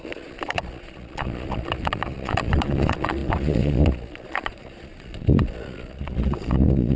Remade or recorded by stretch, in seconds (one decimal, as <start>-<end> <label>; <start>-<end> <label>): 0.0-7.0 remade